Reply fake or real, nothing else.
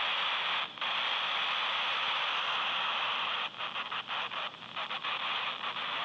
real